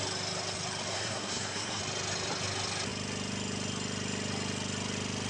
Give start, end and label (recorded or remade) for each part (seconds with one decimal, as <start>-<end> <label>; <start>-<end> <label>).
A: 0.0-0.9 recorded; 0.9-1.8 remade; 1.8-5.3 recorded